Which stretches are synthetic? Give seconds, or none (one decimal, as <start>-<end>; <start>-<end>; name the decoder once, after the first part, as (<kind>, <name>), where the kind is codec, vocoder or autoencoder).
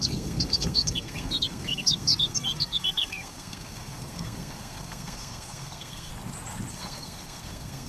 0.0-6.1 (codec, SNAC); 6.7-7.9